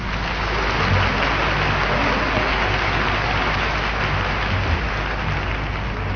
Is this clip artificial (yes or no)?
no